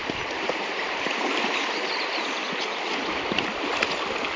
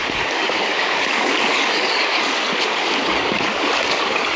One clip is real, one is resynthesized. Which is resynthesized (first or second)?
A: second